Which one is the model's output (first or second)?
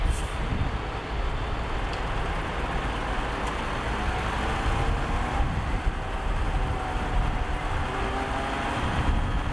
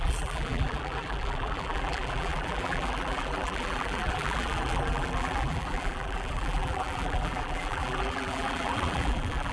second